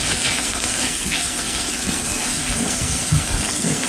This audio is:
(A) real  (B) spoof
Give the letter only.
B